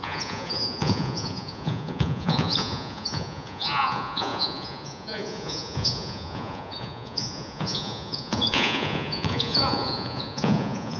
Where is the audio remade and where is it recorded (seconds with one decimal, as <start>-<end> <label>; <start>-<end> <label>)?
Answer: 0.0-11.0 remade